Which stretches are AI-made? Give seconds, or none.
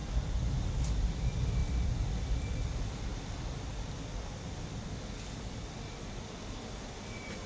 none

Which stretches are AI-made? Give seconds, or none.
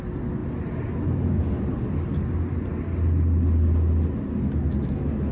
none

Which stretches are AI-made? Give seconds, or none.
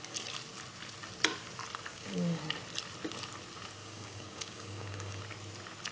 1.9-2.4 (codec, DAC); 3.8-5.2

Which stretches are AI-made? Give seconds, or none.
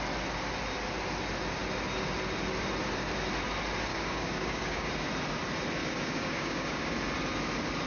3.9-4.9 (codec, DAC); 5.8-6.9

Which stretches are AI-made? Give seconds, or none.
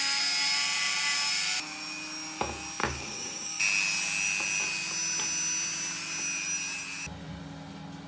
2.8-3.6 (codec, DAC)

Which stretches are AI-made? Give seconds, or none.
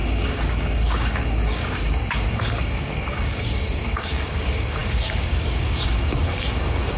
0.0-7.0 (codec, DAC)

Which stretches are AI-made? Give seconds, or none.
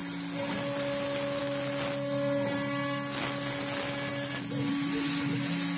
none